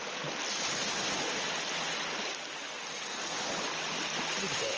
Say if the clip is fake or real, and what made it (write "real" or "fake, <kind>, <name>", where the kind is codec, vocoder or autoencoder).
real